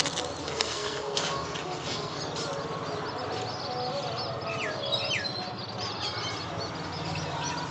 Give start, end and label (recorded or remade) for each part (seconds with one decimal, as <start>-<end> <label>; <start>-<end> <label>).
0.0-0.4 recorded; 0.4-2.2 remade; 2.2-7.7 recorded